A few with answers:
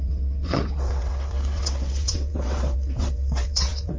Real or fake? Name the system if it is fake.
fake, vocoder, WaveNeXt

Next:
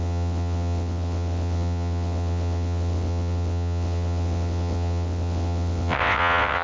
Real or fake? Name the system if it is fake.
fake, vocoder, WaveNeXt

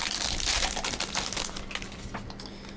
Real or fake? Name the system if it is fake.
real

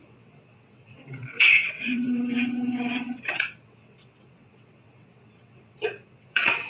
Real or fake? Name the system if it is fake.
fake, vocoder, WaveNeXt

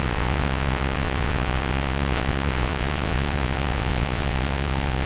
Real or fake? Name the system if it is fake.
fake, vocoder, WaveNeXt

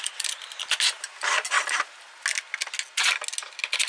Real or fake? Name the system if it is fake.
real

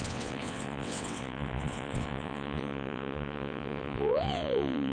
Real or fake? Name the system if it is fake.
fake, vocoder, WaveNeXt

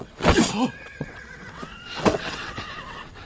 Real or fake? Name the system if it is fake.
fake, vocoder, WaveNeXt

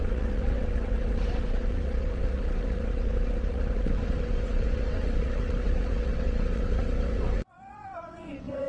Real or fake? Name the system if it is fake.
fake, vocoder, WaveNeXt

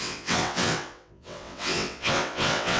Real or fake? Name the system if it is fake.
fake, vocoder, WaveNeXt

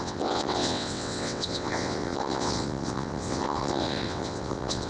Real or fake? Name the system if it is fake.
fake, vocoder, WaveNeXt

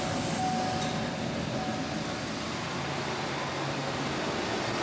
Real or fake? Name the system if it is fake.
real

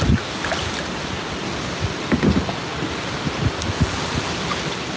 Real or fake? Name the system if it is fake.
real